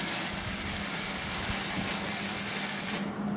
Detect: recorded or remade recorded